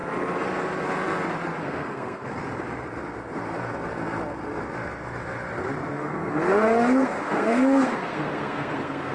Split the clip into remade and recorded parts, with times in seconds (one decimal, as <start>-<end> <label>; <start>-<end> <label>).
0.0-1.6 recorded; 1.6-2.4 remade; 2.4-5.9 recorded; 5.9-9.1 remade